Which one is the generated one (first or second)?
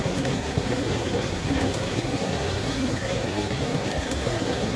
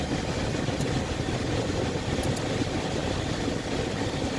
first